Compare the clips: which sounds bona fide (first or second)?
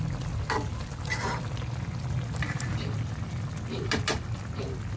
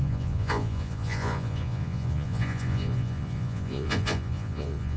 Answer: first